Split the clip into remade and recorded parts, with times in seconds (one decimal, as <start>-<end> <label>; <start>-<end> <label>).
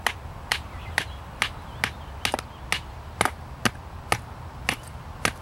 0.0-0.5 recorded; 0.5-1.3 remade; 1.3-5.4 recorded